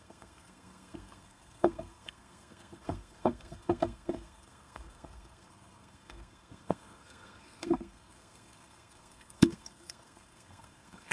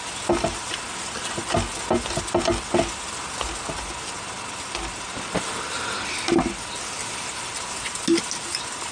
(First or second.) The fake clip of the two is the first